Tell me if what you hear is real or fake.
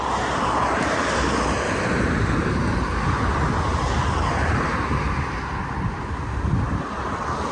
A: real